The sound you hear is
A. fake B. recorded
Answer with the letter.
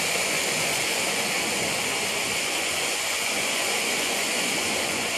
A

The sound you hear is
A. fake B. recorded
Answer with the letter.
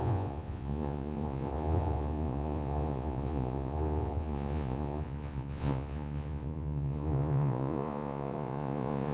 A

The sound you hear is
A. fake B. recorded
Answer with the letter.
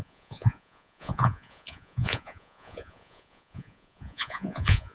A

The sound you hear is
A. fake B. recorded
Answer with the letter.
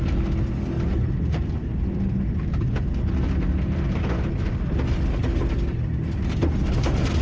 B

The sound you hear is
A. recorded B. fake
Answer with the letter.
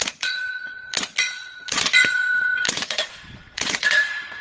B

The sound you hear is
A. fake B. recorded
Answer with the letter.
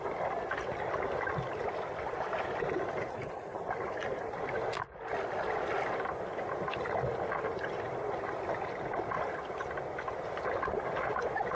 B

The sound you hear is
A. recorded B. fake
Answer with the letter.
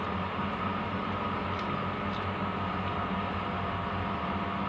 A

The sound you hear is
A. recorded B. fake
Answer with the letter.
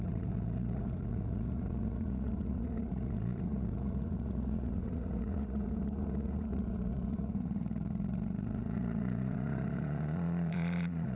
B